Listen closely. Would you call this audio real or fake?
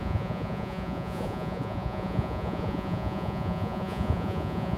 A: fake